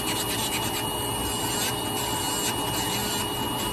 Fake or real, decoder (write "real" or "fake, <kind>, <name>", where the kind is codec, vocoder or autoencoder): real